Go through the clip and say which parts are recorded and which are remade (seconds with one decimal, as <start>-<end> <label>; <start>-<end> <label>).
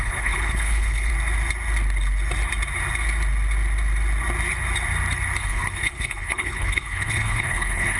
0.0-1.1 remade; 1.1-5.4 recorded; 5.4-8.0 remade